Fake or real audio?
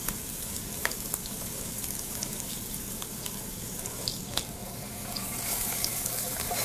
fake